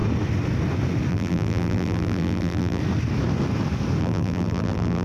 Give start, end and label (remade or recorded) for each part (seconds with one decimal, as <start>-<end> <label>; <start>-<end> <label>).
0.0-1.1 recorded; 1.1-2.8 remade; 2.8-4.0 recorded; 4.0-5.0 remade